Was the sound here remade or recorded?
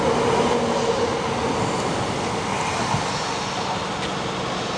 recorded